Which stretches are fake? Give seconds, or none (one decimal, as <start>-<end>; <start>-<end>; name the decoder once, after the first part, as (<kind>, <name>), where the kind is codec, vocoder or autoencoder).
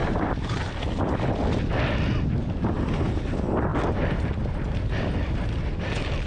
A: 0.0-1.0 (vocoder, BigVGAN v2); 3.7-5.8